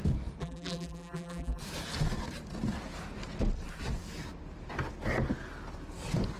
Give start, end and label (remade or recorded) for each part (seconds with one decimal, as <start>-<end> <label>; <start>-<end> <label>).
0.0-0.4 recorded; 0.4-1.6 remade; 1.6-6.4 recorded